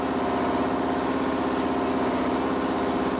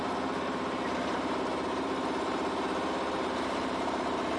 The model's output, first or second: second